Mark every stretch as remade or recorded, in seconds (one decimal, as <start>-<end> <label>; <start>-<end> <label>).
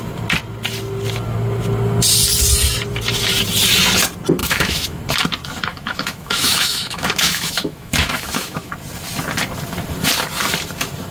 0.0-4.4 recorded; 4.4-5.0 remade; 5.0-5.7 recorded; 5.7-8.7 remade; 8.7-11.1 recorded